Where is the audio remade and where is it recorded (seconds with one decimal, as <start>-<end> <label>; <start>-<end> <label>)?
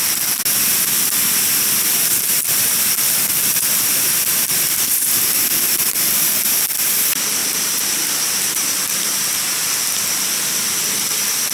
0.0-7.4 recorded; 7.4-9.2 remade; 9.2-11.5 recorded